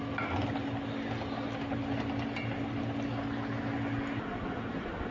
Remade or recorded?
recorded